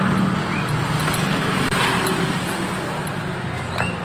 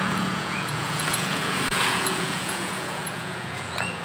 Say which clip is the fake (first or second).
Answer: second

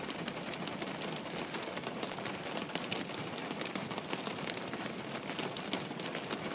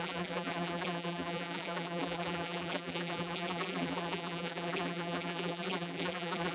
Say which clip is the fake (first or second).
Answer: second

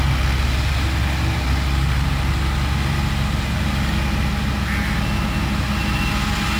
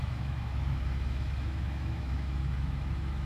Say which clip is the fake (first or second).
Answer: second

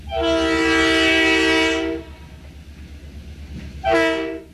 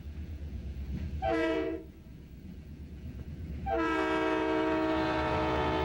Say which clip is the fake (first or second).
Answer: second